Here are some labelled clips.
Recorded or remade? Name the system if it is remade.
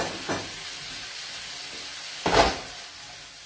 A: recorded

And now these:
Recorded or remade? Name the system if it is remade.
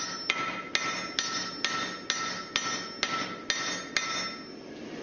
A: recorded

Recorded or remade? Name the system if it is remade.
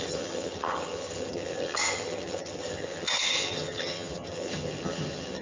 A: remade, vocoder, HiFi-GAN